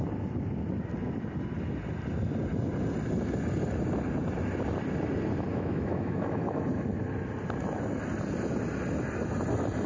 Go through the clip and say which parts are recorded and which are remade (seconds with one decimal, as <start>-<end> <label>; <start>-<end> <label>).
0.0-5.5 recorded; 5.5-6.6 remade; 6.6-9.9 recorded